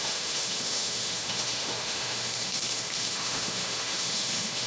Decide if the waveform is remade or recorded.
remade